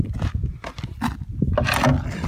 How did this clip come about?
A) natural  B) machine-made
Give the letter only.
A